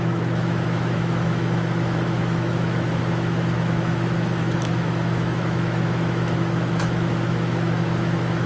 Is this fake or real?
fake